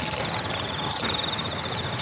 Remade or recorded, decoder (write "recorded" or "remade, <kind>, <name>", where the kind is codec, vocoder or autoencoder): remade, vocoder, BigVGAN v2